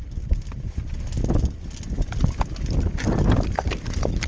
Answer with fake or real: real